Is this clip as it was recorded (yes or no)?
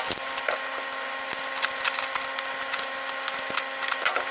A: yes